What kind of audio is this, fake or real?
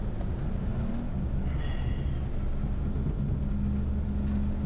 real